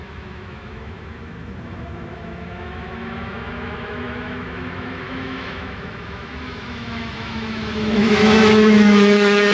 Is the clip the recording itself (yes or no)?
no